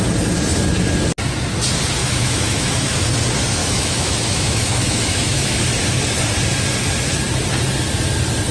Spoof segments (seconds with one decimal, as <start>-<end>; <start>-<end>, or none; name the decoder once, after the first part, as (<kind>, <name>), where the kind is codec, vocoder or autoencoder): 2.0-3.0 (autoencoder, DAC-VAE); 3.6-5.6